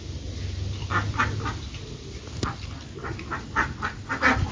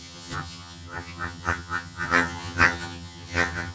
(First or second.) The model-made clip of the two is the second